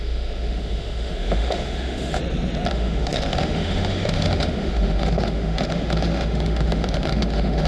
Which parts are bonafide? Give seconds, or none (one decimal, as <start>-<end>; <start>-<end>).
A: 2.2-2.7